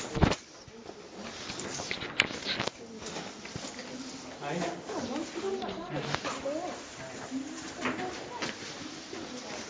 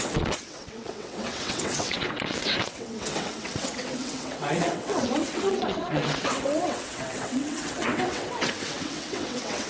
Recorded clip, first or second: first